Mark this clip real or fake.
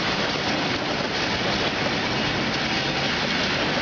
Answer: real